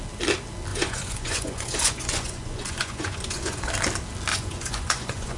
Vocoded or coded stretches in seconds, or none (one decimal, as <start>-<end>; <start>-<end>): 0.7-3.7; 4.3-5.4